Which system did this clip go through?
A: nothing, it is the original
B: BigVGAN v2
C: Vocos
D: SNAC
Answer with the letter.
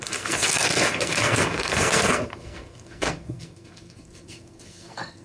D